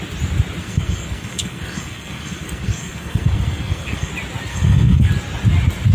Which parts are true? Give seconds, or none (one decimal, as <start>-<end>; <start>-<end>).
0.0-0.6; 4.1-4.5; 5.1-5.9

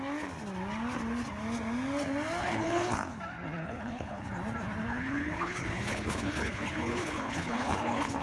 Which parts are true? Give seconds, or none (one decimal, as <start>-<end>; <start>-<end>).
0.0-2.4; 3.2-3.6; 4.3-4.9

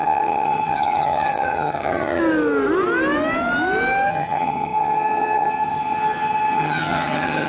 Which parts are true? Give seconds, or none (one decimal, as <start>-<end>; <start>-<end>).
2.2-4.1

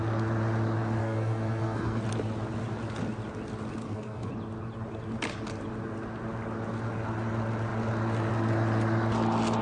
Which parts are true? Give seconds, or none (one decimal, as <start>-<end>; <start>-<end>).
0.0-1.0; 2.0-3.8; 4.3-9.6

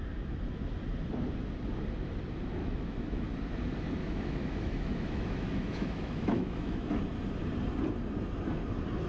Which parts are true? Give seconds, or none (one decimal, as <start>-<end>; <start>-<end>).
0.0-2.6; 3.3-4.0; 6.9-9.1